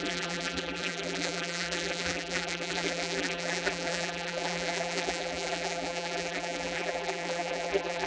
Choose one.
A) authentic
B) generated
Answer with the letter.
B